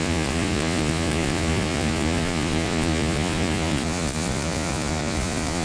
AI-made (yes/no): yes